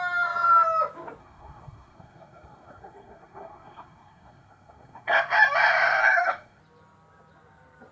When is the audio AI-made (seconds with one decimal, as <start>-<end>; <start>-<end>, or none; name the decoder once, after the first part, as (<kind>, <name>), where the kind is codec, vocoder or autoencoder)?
1.2-5.2 (codec, SNAC); 6.0-6.6